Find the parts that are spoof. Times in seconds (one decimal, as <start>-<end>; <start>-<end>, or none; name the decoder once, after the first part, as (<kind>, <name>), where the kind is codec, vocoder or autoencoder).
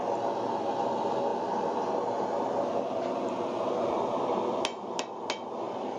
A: none